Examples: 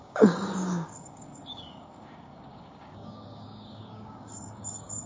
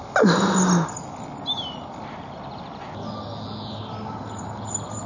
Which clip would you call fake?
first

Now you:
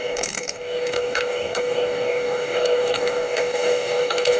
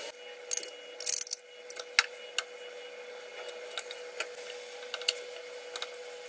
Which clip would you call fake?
first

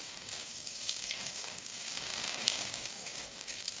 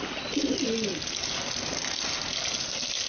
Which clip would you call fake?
first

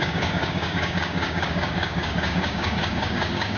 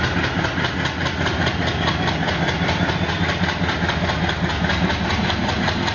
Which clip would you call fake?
first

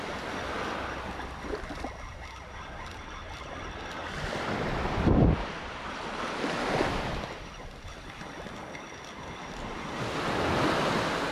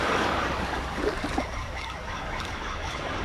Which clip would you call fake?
second